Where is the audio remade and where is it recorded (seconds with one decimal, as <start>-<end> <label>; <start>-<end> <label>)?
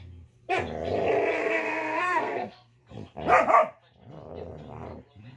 0.0-1.4 recorded; 1.4-2.8 remade; 2.8-5.4 recorded